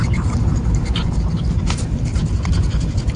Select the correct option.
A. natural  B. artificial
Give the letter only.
A